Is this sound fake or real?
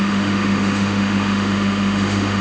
fake